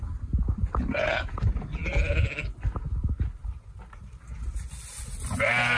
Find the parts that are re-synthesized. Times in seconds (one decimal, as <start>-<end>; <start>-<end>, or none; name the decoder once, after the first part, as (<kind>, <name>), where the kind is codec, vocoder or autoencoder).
none